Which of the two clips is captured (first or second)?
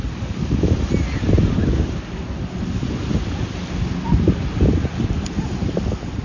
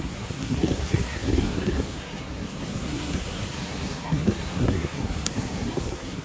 first